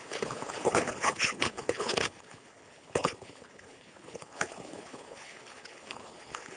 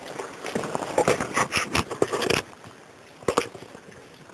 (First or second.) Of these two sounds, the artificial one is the first